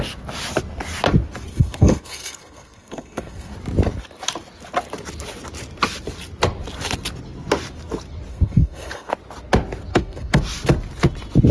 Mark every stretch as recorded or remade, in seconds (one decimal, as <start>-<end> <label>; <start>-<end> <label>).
0.0-1.5 recorded; 1.5-3.5 remade; 3.5-8.3 recorded; 8.3-9.1 remade; 9.1-9.9 recorded; 9.9-10.4 remade; 10.4-11.5 recorded